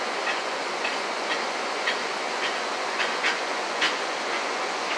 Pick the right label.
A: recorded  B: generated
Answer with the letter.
B